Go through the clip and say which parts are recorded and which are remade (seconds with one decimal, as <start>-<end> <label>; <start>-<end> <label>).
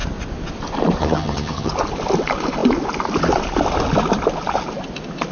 0.0-1.0 recorded; 1.0-1.7 remade; 1.7-5.3 recorded